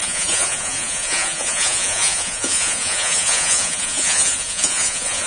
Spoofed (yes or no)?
yes